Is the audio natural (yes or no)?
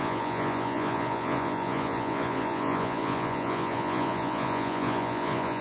no